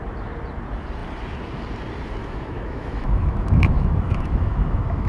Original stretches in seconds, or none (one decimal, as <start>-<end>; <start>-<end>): 0.0-2.2